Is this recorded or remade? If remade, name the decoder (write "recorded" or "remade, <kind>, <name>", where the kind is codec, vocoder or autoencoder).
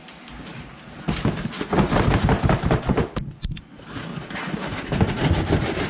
recorded